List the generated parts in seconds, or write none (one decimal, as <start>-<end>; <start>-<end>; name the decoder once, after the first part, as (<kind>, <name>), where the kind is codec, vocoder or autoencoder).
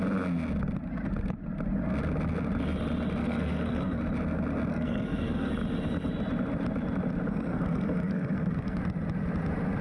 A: 3.2-4.0 (codec, SNAC); 4.7-5.5; 7.3-8.8